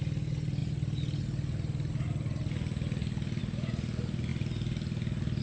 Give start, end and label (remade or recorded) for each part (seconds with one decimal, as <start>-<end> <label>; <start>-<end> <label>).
0.0-5.4 recorded